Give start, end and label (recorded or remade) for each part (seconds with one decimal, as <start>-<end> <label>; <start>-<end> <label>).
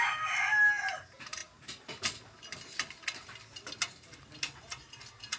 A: 0.0-5.4 recorded